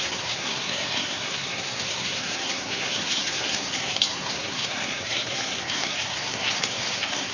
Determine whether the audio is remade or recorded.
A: remade